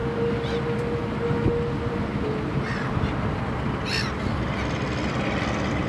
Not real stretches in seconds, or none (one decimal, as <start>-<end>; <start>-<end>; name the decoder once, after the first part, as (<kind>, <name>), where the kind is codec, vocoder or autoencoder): none